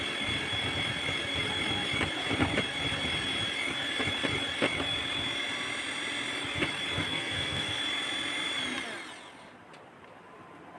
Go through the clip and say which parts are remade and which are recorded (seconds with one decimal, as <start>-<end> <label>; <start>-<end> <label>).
0.0-7.1 recorded; 7.1-7.8 remade; 7.8-10.8 recorded

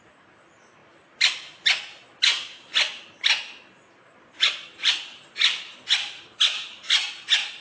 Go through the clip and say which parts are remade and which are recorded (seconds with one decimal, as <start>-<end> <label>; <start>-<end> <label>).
0.0-7.6 recorded

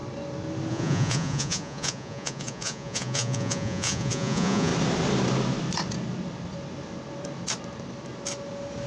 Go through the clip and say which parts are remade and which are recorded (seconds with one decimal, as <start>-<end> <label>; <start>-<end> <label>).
0.0-0.7 recorded; 0.7-4.7 remade; 4.7-8.9 recorded

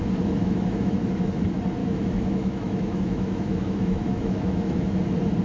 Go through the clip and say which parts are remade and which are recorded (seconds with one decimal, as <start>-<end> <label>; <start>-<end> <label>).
0.0-0.4 recorded; 0.4-1.4 remade; 1.4-1.8 recorded; 1.8-5.0 remade; 5.0-5.4 recorded

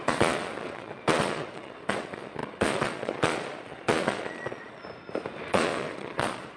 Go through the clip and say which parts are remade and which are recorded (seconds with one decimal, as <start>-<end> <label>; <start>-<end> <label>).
0.0-4.8 remade; 4.8-5.5 recorded; 5.5-6.6 remade

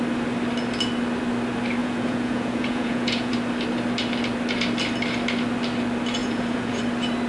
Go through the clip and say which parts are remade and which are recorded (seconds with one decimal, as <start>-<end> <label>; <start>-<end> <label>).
0.0-1.8 recorded; 1.8-3.3 remade; 3.3-6.2 recorded; 6.2-6.8 remade; 6.8-7.3 recorded

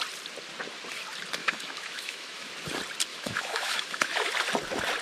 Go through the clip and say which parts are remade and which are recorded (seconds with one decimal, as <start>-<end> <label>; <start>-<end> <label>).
0.0-1.4 recorded; 1.4-2.5 remade; 2.5-3.1 recorded; 3.1-4.3 remade; 4.3-5.0 recorded